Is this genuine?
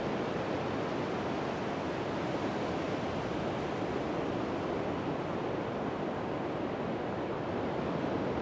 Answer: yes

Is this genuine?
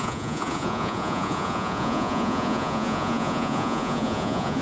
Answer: no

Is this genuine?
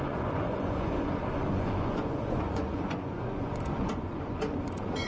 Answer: no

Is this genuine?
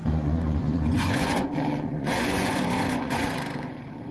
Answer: no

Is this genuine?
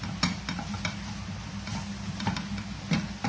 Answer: yes